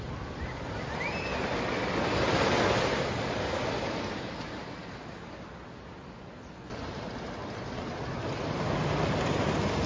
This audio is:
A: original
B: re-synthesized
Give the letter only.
A